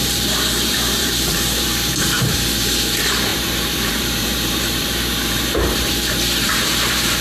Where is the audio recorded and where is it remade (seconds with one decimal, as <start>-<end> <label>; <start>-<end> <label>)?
0.0-7.2 remade